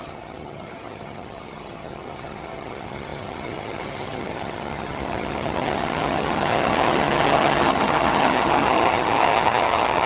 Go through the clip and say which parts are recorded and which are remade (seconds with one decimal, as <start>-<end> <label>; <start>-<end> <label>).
0.0-10.1 remade